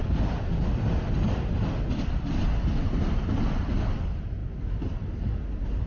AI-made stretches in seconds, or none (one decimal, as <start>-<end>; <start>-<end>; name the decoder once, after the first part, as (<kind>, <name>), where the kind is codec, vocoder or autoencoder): none

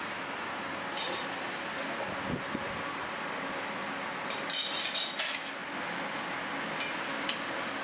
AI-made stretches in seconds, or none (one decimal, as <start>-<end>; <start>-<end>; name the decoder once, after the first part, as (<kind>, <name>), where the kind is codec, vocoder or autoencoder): none

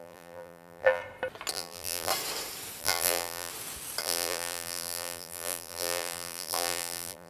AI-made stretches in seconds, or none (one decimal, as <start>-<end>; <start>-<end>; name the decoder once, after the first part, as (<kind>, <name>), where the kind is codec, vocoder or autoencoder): 0.0-1.0 (vocoder, BigVGAN v2); 1.5-2.1; 2.8-3.5; 4.0-7.3